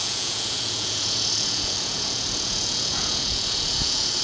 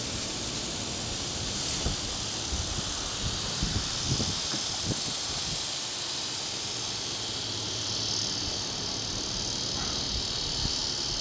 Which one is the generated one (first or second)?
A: first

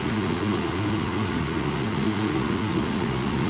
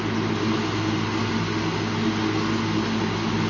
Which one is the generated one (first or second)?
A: first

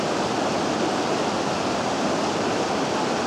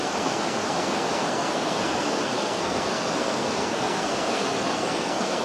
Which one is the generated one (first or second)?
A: second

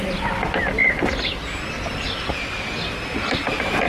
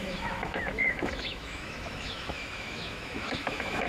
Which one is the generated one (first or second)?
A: second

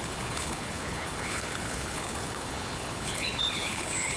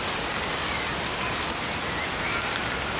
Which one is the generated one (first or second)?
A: first